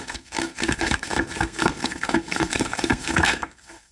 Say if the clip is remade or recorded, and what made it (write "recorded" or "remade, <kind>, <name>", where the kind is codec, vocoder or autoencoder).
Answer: remade, codec, SNAC